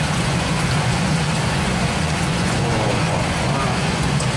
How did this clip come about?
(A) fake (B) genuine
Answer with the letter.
A